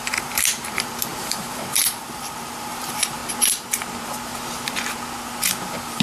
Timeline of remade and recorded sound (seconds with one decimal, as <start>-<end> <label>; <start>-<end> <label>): 0.0-3.2 remade; 3.2-5.6 recorded; 5.6-6.0 remade